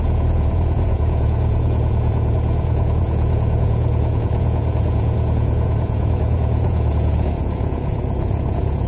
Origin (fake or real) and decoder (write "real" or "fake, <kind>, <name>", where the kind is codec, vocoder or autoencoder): fake, vocoder, Vocos